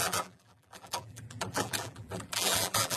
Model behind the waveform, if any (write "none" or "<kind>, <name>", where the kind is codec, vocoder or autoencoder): vocoder, BigVGAN v2